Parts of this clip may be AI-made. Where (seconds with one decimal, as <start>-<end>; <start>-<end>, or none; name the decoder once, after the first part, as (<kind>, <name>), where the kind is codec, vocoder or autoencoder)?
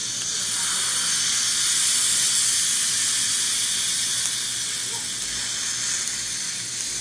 none